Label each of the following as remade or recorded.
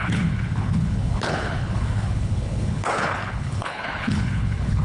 remade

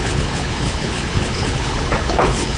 remade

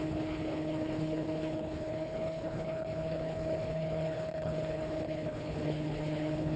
remade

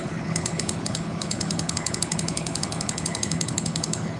remade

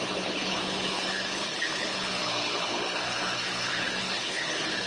remade